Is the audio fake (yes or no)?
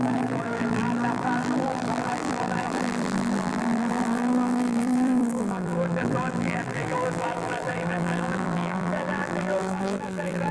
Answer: yes